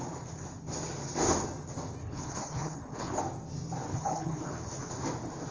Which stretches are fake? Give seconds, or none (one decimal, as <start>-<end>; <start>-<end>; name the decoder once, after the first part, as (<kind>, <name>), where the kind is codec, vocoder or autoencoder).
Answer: 2.0-3.2 (codec, HILCodec); 3.9-4.9